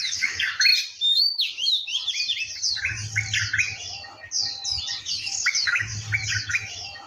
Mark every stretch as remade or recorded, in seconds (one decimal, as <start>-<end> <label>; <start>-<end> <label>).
0.0-0.7 remade; 0.7-1.2 recorded; 1.2-1.9 remade; 1.9-5.0 recorded; 5.0-5.9 remade; 5.9-6.5 recorded; 6.5-7.1 remade

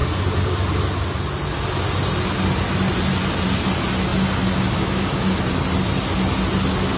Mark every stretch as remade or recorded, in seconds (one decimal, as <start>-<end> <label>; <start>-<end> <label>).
0.0-7.0 recorded